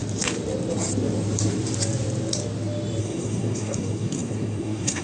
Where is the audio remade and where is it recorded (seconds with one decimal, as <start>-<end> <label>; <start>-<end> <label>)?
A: 0.0-3.0 recorded; 3.0-5.0 remade